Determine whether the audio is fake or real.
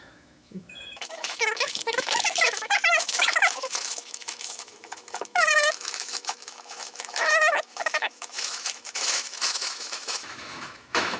fake